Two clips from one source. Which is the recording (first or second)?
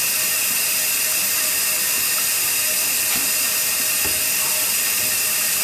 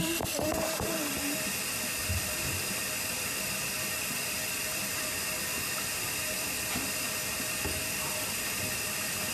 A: first